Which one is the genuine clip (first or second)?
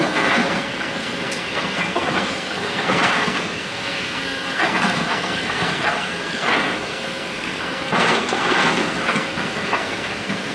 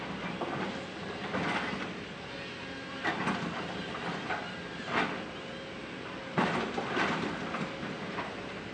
second